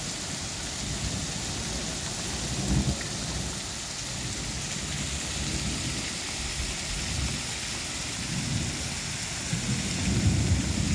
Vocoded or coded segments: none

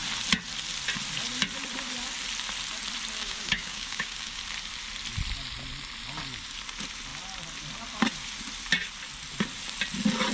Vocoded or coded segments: 3.2-4.4

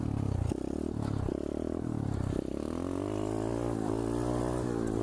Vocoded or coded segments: none

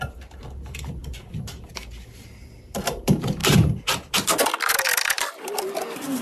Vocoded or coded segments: 0.0-6.2

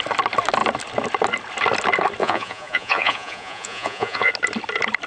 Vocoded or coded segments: 2.2-4.3